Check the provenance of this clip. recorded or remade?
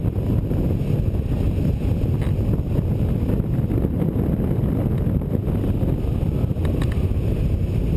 recorded